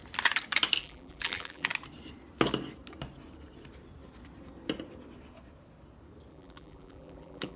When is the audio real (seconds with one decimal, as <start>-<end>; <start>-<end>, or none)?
0.0-0.8; 1.7-6.3